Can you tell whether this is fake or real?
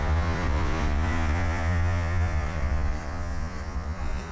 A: fake